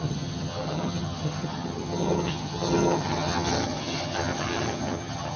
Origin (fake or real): fake